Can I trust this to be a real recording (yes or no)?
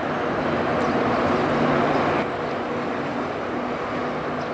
yes